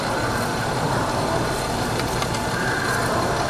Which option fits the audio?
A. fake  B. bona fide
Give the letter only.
A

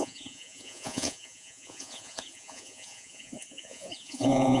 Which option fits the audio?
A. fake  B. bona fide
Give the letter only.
A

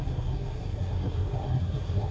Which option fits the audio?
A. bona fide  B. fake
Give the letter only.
B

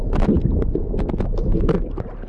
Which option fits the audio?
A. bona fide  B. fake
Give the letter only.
A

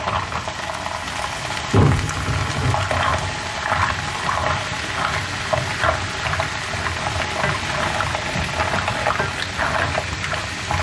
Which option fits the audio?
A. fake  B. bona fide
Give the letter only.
B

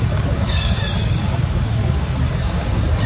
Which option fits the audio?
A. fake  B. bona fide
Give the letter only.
A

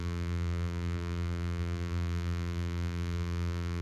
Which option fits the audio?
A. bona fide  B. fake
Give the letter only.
B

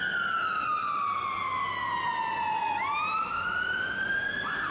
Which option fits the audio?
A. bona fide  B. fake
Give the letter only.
A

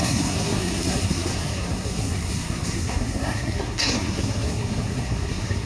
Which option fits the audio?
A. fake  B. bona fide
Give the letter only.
A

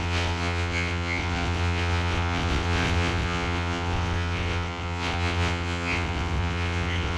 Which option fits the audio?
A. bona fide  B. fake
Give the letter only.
B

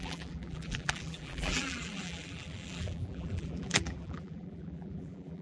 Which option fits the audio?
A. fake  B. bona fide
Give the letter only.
A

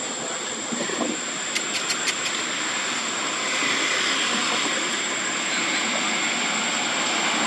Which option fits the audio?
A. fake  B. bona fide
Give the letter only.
B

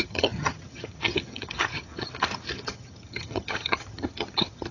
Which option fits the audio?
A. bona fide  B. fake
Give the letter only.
B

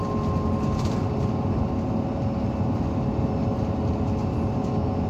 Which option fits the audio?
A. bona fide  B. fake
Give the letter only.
A